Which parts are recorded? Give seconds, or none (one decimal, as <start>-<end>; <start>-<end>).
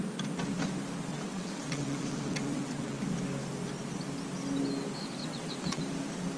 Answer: 0.0-1.1; 3.0-5.2; 5.8-6.4